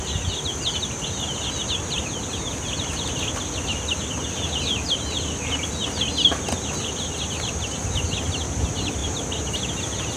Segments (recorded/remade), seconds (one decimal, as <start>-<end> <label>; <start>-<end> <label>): 0.0-10.2 recorded